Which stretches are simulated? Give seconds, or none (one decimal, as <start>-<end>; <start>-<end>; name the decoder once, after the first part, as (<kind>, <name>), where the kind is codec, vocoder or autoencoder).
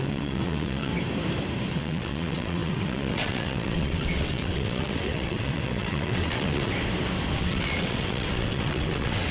0.0-0.9 (vocoder, WaveNeXt); 1.7-6.7; 7.3-9.3